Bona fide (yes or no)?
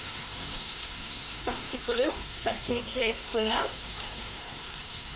no